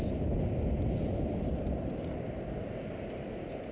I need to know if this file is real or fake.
real